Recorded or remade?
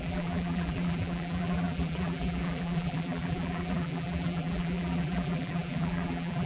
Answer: remade